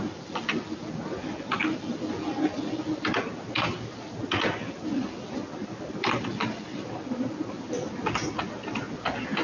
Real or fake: real